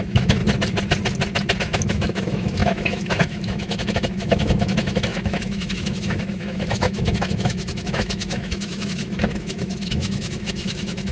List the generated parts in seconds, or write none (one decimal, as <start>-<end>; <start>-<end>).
0.0-0.4; 1.6-11.1